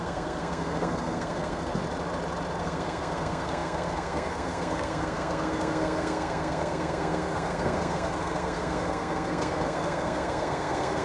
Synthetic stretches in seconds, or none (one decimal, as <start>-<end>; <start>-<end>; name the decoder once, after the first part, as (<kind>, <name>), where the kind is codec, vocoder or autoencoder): 0.0-1.8 (codec, SNAC); 2.6-11.0